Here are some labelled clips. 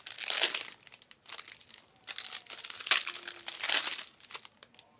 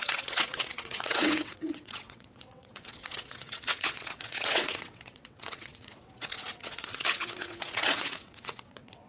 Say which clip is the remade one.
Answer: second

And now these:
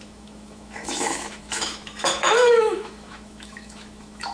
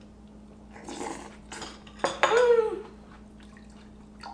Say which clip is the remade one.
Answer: first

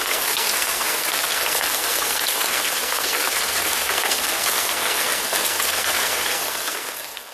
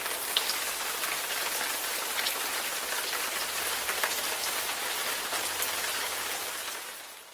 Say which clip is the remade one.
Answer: first